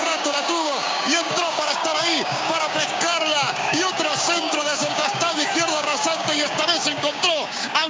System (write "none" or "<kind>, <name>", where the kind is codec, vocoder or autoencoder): codec, DAC